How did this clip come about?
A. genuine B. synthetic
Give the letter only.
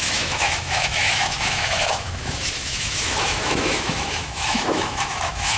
B